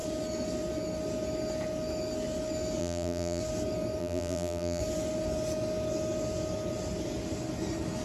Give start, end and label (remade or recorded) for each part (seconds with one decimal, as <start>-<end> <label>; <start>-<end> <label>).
0.0-2.8 recorded; 2.8-3.4 remade; 3.4-4.0 recorded; 4.0-4.8 remade; 4.8-8.0 recorded